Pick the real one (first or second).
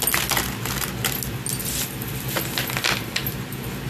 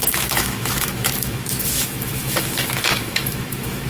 first